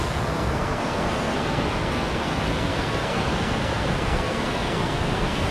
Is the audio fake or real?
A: fake